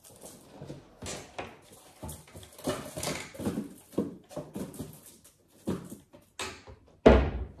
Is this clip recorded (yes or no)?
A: yes